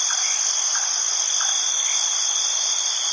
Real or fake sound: real